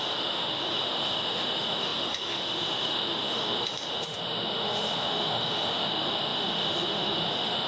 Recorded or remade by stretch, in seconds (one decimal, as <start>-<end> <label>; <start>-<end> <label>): 0.0-7.7 remade